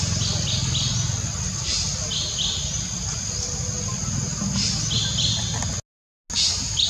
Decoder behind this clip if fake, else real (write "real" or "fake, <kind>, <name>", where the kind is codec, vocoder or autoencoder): real